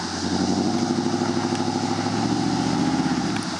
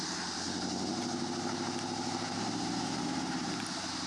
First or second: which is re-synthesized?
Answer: second